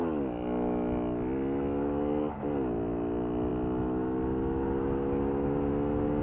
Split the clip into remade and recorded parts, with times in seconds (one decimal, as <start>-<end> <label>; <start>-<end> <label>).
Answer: 0.0-6.2 recorded